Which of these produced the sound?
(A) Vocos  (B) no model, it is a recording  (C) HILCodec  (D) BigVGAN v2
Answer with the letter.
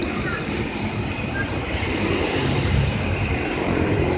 D